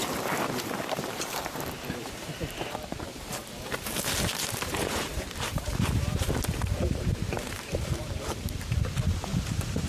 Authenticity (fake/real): fake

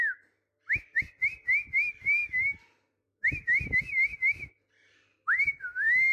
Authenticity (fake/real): real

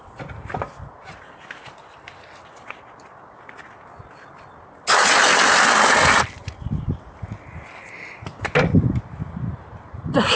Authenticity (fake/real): real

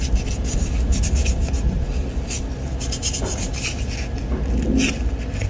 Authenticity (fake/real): real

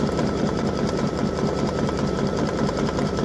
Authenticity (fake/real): fake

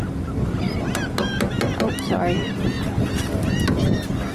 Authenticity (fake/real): real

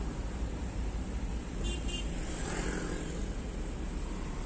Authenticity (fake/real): real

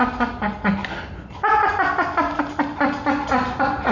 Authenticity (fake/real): real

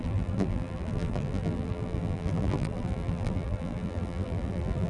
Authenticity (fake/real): fake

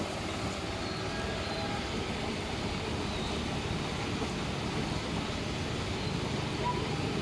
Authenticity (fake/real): real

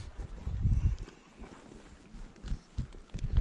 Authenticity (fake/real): real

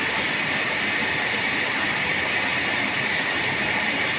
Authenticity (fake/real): fake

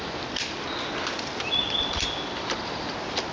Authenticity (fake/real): real